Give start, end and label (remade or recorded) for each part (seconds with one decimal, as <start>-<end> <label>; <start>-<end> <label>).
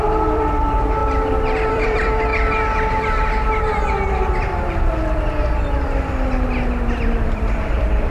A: 0.0-2.3 remade; 2.3-7.0 recorded; 7.0-8.1 remade